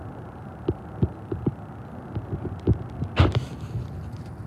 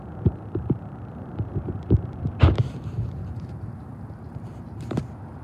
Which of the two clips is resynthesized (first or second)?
second